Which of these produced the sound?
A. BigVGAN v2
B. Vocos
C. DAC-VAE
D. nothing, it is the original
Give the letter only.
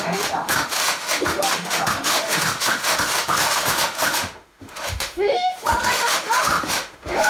C